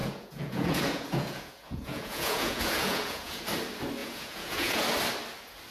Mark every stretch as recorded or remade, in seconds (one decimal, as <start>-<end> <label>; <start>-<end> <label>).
0.0-3.4 remade; 3.4-4.0 recorded; 4.0-4.8 remade; 4.8-5.7 recorded